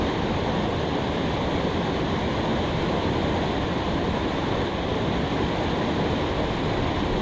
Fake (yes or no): no